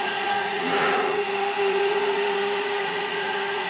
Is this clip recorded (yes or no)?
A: no